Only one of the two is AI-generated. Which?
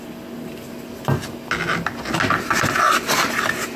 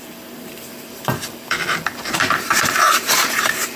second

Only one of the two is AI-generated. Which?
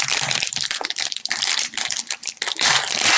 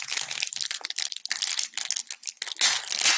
first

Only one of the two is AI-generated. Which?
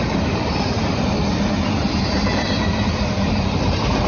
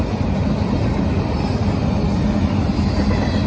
first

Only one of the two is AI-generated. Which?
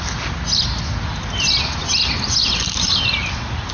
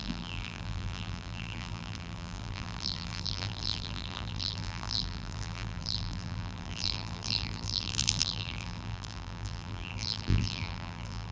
second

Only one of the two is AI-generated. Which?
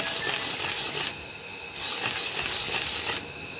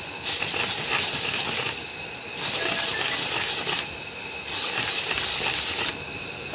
second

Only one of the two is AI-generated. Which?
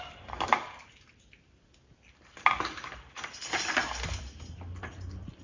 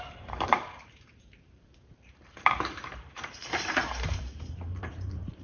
second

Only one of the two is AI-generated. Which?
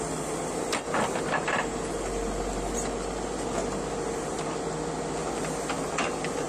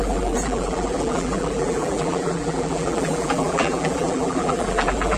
second